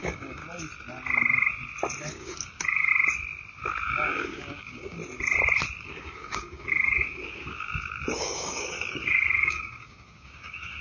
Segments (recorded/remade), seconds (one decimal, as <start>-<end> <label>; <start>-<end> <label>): 0.0-0.4 remade; 0.4-2.1 recorded; 2.1-2.9 remade; 2.9-3.9 recorded; 3.9-5.0 remade; 5.0-5.8 recorded; 5.8-10.8 remade